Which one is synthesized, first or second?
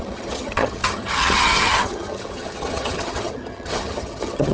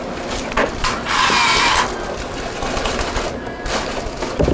first